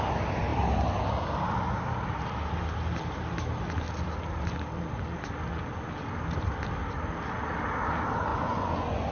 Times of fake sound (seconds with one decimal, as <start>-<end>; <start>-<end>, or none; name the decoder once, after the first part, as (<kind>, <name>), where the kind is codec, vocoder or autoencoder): 8.3-9.1 (vocoder, Vocos)